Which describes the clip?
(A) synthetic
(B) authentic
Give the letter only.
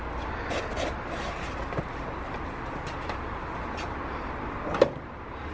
B